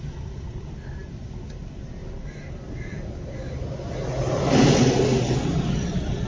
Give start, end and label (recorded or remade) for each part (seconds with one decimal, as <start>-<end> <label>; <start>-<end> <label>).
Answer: 0.0-6.3 recorded